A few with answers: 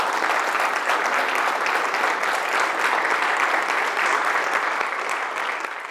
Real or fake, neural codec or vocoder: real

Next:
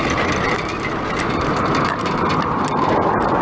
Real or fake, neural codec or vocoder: real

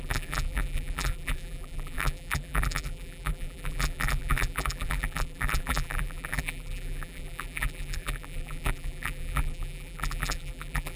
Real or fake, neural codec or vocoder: fake, vocoder, BigVGAN v2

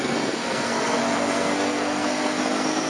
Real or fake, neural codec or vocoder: fake, codec, SNAC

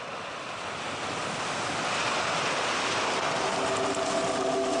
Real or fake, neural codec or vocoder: real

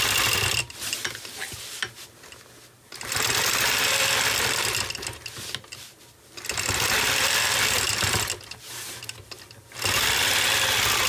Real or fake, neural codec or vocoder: real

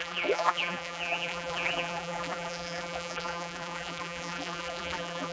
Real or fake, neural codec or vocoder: fake, vocoder, BigVGAN v2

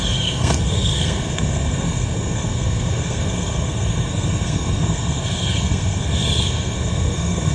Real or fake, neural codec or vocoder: fake, codec, SNAC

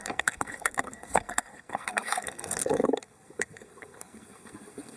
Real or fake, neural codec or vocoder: fake, codec, SNAC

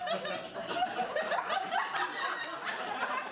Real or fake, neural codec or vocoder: real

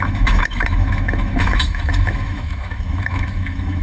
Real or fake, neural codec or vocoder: fake, autoencoder, DAC-VAE